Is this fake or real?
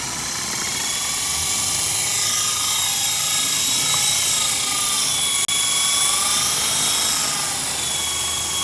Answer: real